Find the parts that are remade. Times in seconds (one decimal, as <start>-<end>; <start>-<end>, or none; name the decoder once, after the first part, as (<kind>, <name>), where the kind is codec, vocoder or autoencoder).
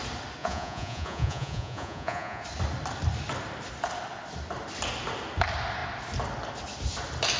0.4-2.4 (vocoder, Vocos)